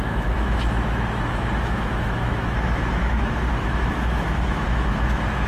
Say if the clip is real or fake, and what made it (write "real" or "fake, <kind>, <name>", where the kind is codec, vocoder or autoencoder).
fake, autoencoder, DAC-VAE